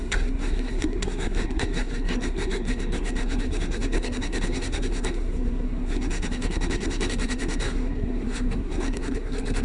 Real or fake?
fake